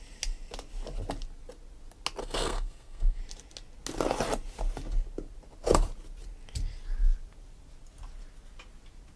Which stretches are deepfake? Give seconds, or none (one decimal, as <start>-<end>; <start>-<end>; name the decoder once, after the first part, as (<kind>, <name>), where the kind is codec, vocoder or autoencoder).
2.2-3.2 (codec, SNAC)